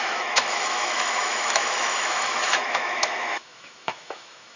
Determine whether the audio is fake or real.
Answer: fake